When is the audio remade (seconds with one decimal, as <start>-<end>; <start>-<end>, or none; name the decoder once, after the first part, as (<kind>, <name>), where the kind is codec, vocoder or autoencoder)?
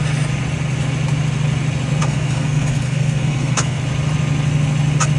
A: 2.0-3.8 (codec, SNAC)